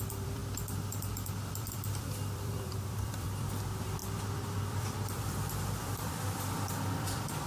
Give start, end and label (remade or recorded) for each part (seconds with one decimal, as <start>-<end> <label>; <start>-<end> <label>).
0.0-0.4 remade; 0.4-1.3 recorded; 1.3-7.5 remade